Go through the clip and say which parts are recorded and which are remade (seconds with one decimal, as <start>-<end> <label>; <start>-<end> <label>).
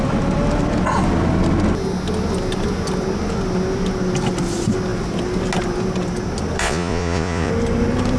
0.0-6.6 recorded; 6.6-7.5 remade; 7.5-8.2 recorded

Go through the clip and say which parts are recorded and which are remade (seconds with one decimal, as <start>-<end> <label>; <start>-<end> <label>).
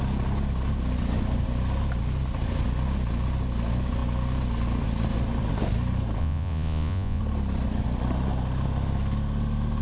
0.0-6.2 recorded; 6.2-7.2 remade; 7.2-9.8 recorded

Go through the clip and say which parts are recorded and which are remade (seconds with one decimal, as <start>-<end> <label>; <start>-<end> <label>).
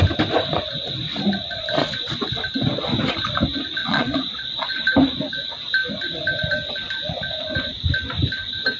0.0-3.8 recorded; 3.8-4.7 remade; 4.7-8.8 recorded